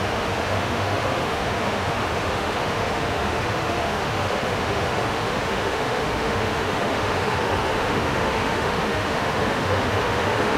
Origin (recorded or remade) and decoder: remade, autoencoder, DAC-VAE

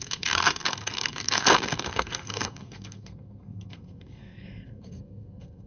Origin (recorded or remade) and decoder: remade, codec, SNAC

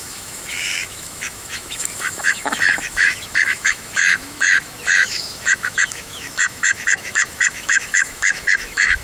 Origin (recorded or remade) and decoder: remade, autoencoder, DAC-VAE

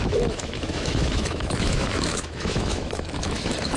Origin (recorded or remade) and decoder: remade, autoencoder, DAC-VAE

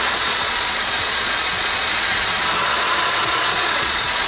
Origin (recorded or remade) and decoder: remade, vocoder, Vocos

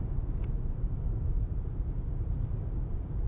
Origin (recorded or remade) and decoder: remade, vocoder, BigVGAN v2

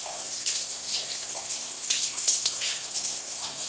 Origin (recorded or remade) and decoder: remade, codec, SNAC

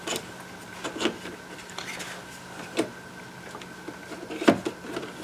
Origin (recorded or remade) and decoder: recorded